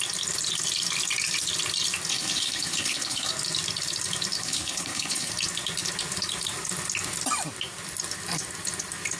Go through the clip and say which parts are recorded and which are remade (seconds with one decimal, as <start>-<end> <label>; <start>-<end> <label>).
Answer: 0.0-2.1 recorded; 2.1-3.3 remade; 3.3-4.4 recorded; 4.4-5.3 remade; 5.3-9.2 recorded